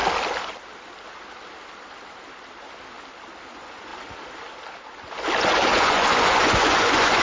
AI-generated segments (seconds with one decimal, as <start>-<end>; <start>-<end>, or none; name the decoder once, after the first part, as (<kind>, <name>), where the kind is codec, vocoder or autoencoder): 3.5-3.9 (vocoder, Vocos); 5.4-7.2